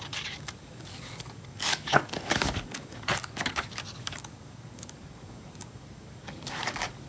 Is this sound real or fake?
fake